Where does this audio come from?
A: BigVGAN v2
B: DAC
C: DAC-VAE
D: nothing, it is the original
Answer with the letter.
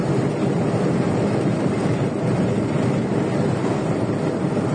D